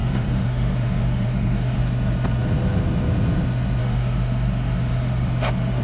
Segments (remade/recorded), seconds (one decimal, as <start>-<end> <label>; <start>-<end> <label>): 0.0-1.8 remade; 1.8-3.8 recorded; 3.8-5.8 remade